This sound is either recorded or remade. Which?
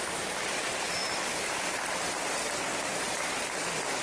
recorded